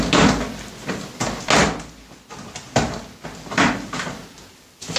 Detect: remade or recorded recorded